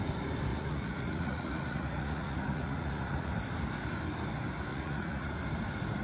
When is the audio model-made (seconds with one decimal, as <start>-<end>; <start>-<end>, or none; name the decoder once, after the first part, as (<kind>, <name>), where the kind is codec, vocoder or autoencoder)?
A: 0.5-3.3 (vocoder, Vocos); 4.7-5.3